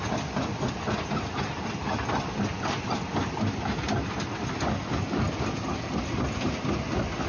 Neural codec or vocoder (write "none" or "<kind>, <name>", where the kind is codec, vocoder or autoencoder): none